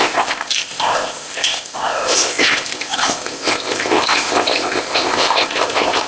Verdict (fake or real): fake